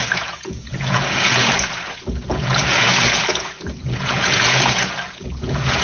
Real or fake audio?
fake